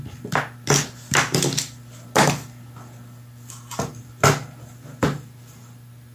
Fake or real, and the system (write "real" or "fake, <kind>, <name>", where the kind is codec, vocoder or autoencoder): real